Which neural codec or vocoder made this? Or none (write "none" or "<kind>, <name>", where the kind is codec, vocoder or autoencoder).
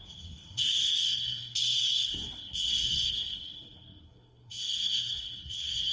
codec, SNAC